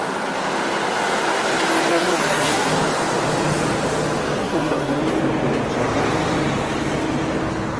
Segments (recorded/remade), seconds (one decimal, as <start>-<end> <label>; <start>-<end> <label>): 0.0-1.9 recorded; 1.9-2.7 remade; 2.7-4.4 recorded; 4.4-5.0 remade; 5.0-7.8 recorded